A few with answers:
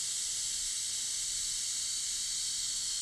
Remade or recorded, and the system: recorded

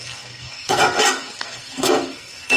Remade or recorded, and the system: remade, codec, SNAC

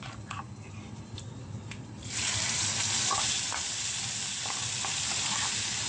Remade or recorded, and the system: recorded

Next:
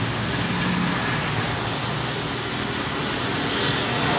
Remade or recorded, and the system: recorded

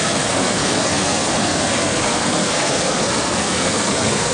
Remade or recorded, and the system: remade, codec, SNAC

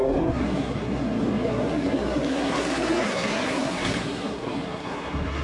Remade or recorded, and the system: remade, codec, SNAC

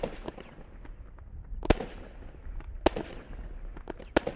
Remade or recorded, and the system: recorded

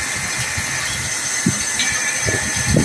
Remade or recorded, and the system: recorded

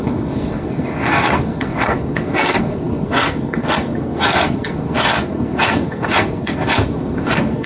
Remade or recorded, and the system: remade, codec, SNAC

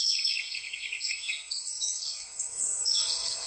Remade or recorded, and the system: remade, codec, SNAC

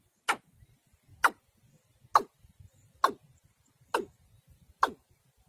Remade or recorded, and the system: recorded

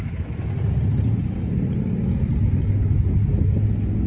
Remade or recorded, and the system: recorded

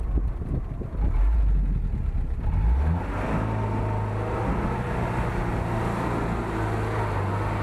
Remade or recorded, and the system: recorded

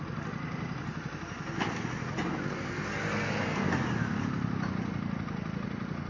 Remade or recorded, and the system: recorded